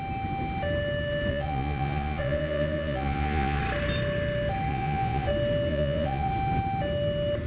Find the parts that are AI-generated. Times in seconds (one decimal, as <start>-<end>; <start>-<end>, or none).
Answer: 1.3-3.6; 4.7-5.3; 5.7-6.3